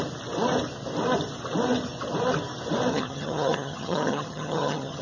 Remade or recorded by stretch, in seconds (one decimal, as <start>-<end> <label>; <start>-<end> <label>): 0.0-2.9 recorded; 2.9-5.0 remade